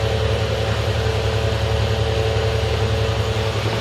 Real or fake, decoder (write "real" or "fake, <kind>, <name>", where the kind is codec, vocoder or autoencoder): real